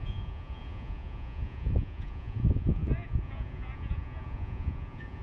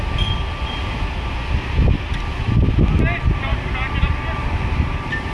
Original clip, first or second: second